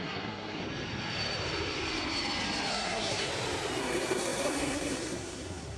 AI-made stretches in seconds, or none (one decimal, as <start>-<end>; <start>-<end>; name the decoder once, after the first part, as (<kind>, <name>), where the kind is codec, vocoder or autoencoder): 0.0-0.6 (codec, SNAC); 2.7-3.3; 3.8-5.8